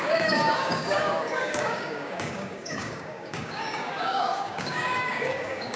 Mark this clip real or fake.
fake